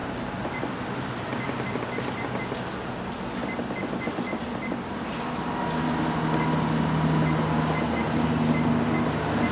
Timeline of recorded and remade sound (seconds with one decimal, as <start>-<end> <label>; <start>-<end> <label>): 0.0-9.5 recorded